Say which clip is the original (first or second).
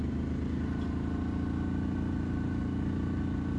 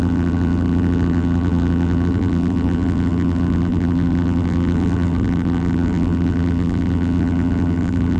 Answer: first